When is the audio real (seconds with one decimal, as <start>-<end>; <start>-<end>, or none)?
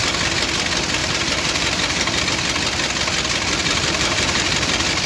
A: 0.0-1.0; 2.2-3.6; 4.5-5.1